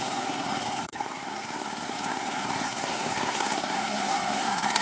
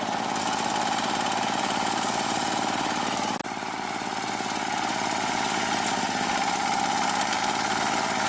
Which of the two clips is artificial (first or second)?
first